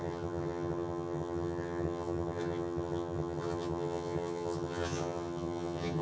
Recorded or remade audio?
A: remade